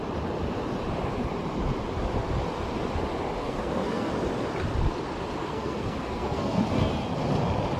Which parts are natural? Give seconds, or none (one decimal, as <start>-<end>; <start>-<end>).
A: 0.0-3.4; 4.1-5.4; 6.6-7.8